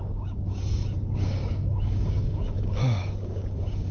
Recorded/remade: remade